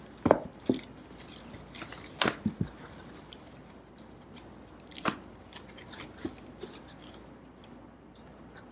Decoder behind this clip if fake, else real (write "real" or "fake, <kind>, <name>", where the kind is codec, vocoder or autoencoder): real